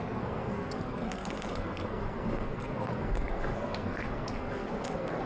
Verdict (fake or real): fake